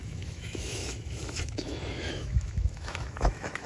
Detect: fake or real fake